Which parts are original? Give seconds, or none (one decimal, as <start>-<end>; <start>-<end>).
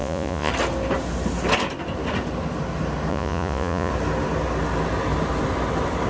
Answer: 0.5-3.1; 3.9-6.1